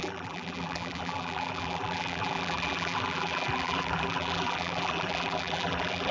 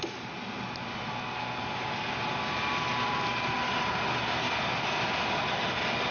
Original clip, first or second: second